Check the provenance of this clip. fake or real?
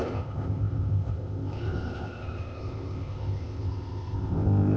fake